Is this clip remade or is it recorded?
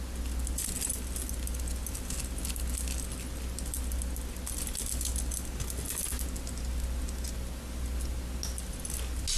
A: recorded